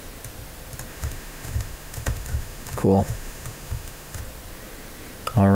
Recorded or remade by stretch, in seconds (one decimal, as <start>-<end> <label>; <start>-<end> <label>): 0.0-0.9 recorded; 0.9-4.2 remade; 4.2-5.5 recorded